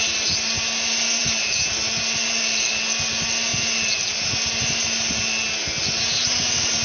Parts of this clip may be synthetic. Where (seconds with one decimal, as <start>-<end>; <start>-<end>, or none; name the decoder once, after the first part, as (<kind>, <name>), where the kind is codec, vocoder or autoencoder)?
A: none